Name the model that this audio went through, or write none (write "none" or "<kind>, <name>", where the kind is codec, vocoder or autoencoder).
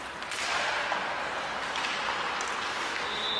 none